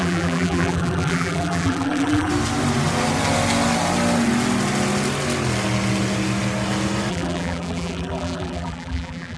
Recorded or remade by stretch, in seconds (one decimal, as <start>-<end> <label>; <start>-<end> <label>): 0.0-2.3 remade; 2.3-7.1 recorded; 7.1-9.4 remade